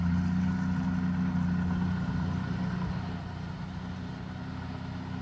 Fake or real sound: real